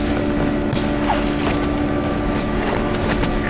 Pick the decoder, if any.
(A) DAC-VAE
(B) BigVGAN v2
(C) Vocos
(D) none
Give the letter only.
D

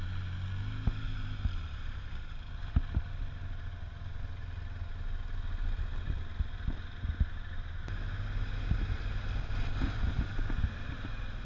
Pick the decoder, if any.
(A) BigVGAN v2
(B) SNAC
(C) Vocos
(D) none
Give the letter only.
D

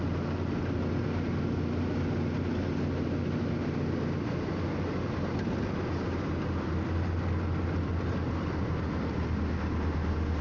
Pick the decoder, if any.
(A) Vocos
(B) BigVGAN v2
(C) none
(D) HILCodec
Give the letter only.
C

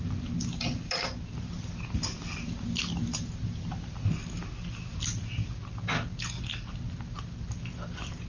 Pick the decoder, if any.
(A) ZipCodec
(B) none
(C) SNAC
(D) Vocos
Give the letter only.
B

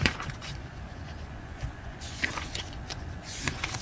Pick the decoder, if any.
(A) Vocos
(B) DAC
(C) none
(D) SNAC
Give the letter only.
A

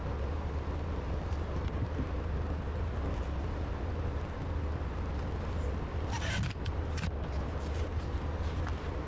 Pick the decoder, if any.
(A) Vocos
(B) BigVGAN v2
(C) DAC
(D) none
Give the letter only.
D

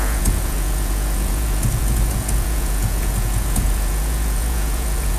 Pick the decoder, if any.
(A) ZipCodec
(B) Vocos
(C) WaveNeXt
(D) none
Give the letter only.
B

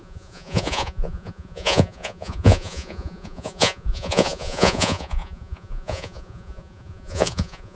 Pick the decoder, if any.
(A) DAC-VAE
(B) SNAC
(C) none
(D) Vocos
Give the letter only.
D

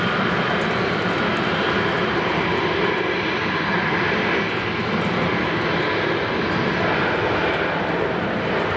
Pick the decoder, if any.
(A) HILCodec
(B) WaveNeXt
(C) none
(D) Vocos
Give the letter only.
C